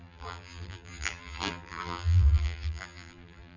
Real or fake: fake